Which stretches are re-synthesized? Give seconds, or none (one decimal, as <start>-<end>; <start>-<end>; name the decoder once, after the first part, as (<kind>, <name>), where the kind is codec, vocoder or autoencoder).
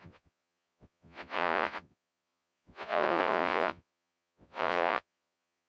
0.0-5.7 (vocoder, Vocos)